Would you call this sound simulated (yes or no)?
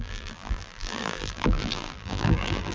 yes